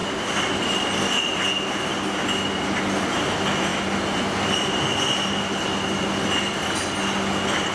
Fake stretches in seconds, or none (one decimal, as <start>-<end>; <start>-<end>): none